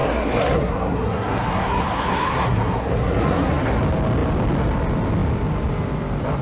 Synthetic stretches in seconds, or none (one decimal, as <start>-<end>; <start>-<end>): 0.0-3.8